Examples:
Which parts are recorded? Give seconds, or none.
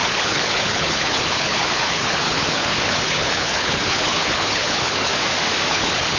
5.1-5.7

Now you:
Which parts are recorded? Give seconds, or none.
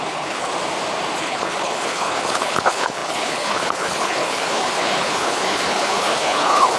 0.5-1.2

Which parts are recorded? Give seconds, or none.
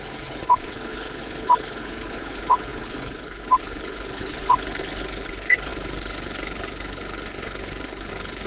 none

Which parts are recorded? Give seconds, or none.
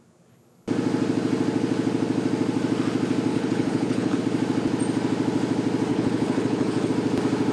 0.0-3.3; 4.2-5.9; 6.9-7.5